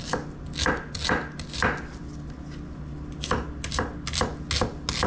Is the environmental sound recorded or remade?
recorded